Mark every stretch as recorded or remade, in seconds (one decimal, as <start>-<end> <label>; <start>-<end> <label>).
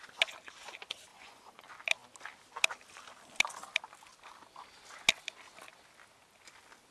0.0-1.1 recorded; 1.1-1.6 remade; 1.6-6.9 recorded